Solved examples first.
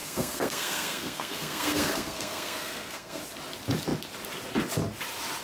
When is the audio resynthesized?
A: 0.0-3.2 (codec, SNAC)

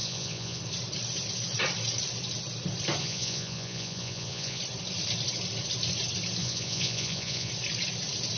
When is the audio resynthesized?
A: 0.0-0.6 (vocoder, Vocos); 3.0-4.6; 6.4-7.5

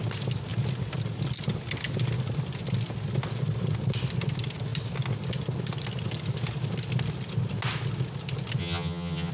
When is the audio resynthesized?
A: 8.6-9.3 (vocoder, HiFi-GAN)

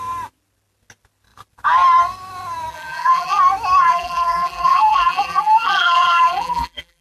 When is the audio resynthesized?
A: 2.7-3.4 (vocoder, BigVGAN v2); 3.8-7.0

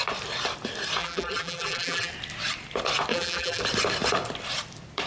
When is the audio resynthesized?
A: 1.0-2.1 (vocoder, BigVGAN v2); 3.1-3.6

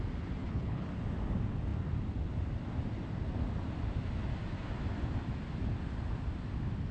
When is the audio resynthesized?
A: 0.4-0.9 (codec, HILCodec)